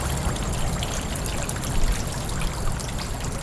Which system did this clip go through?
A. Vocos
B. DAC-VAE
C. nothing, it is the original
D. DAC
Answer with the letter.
C